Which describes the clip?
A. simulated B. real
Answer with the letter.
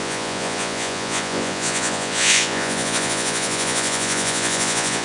A